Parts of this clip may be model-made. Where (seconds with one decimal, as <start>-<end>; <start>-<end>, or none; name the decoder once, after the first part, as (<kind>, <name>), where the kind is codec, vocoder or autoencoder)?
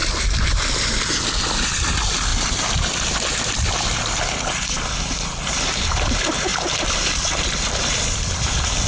6.5-8.1 (vocoder, BigVGAN v2)